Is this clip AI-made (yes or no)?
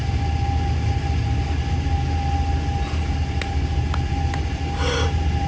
no